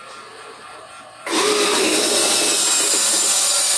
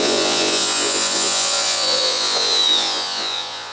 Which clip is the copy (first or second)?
second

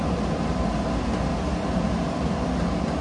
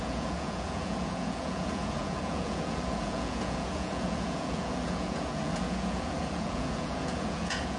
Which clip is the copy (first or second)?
second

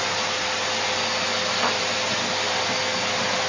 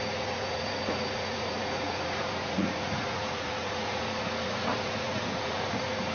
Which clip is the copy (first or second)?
second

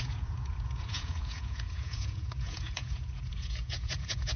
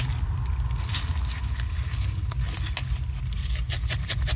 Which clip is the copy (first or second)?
first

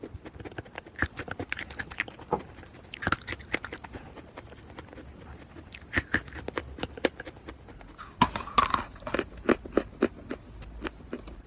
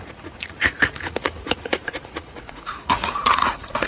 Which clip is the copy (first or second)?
second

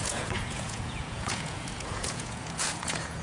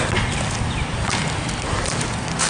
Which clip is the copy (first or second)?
first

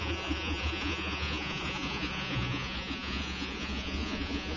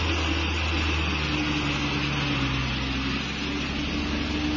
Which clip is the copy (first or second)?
first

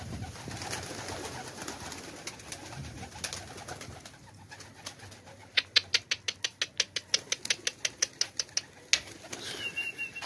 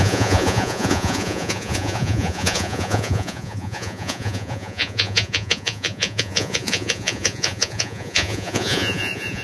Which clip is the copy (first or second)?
second